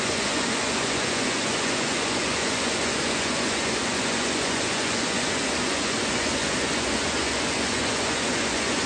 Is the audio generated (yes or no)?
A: yes